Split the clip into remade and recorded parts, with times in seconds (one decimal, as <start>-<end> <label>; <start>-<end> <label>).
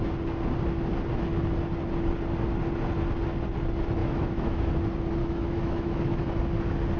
0.0-4.0 recorded; 4.0-4.7 remade; 4.7-5.2 recorded; 5.2-6.3 remade; 6.3-7.0 recorded